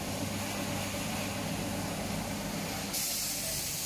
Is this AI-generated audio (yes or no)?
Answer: no